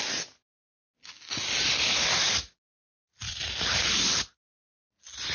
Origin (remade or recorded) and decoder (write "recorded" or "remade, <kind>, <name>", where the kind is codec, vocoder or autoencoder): recorded